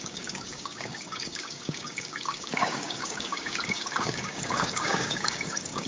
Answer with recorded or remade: remade